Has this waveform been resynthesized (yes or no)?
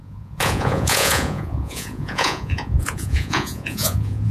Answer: yes